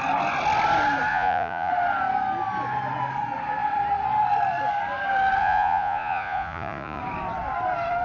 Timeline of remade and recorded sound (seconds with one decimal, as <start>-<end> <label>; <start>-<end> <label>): 0.0-1.1 recorded; 1.1-1.7 remade; 1.7-5.4 recorded; 5.4-7.0 remade; 7.0-8.0 recorded